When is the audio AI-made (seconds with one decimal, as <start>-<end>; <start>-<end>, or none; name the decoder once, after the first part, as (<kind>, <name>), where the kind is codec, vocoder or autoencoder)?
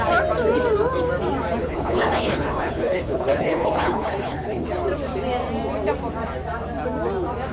1.6-4.7 (codec, HILCodec)